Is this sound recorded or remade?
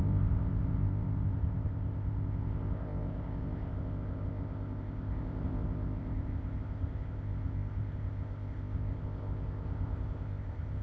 remade